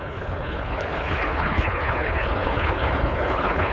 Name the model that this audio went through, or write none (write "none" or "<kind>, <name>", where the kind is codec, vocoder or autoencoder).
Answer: codec, HILCodec